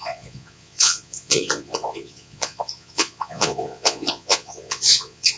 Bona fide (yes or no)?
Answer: no